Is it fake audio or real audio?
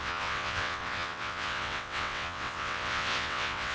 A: fake